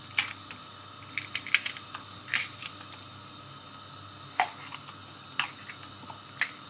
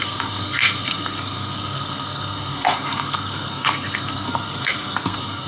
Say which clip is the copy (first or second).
second